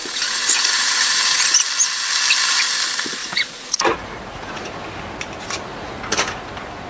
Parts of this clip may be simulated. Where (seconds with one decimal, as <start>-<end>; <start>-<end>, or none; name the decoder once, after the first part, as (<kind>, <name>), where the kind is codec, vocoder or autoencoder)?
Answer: 0.0-1.5 (vocoder, Vocos); 3.2-4.7; 5.7-6.5